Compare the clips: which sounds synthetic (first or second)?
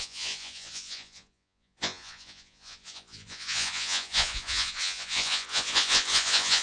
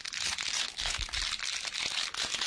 first